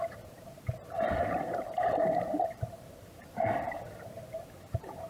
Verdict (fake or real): fake